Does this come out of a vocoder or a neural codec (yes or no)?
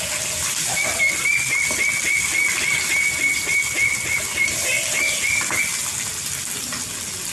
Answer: no